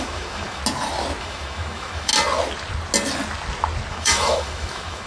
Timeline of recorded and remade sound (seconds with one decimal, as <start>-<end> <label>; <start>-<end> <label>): 0.0-0.6 remade; 0.6-1.2 recorded; 1.2-2.1 remade; 2.1-3.9 recorded; 3.9-5.1 remade